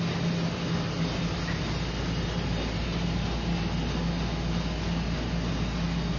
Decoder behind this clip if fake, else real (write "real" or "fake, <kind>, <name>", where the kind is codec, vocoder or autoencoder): real